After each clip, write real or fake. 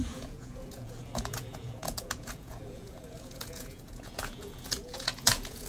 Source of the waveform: fake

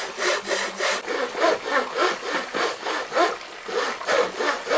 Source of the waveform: real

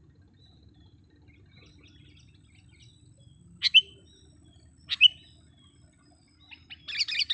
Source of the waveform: real